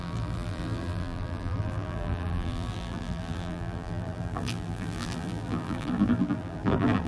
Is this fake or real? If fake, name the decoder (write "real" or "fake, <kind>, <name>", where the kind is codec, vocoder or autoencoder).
fake, vocoder, BigVGAN v2